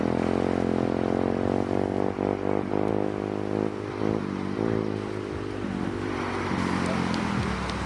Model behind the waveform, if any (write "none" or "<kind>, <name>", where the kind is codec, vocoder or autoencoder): none